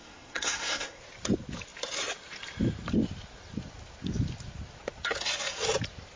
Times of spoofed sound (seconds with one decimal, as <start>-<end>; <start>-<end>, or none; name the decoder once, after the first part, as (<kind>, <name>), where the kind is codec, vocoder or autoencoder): 0.0-1.0 (codec, SNAC)